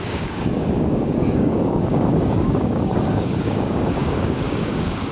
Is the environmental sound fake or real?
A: fake